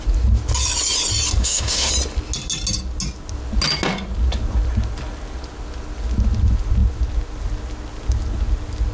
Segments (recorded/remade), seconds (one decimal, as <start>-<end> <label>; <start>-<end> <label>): 0.0-1.4 recorded; 1.4-1.9 remade; 1.9-8.9 recorded